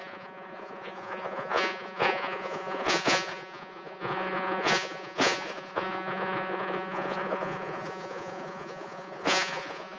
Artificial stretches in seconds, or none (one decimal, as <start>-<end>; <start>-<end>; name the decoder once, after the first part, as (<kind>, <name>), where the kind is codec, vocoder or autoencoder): 0.0-10.0 (vocoder, Vocos)

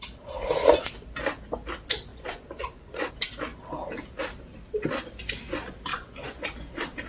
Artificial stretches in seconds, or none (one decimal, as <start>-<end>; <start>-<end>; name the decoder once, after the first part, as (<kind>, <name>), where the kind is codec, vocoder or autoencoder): 2.1-3.1 (vocoder, Vocos); 5.9-6.4

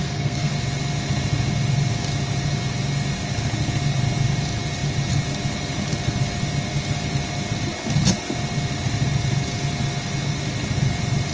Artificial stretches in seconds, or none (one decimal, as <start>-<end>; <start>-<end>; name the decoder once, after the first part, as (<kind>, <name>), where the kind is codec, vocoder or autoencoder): 0.0-0.5 (codec, SNAC)

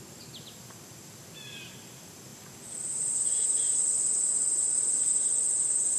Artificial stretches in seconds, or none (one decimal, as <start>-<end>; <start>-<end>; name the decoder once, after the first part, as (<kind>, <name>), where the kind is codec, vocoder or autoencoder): none